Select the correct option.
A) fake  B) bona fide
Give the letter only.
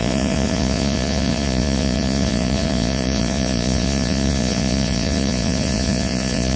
A